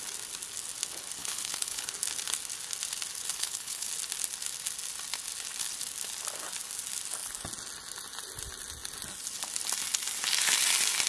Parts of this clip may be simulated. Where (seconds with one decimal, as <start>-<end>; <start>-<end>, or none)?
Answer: 1.2-1.9; 3.3-3.9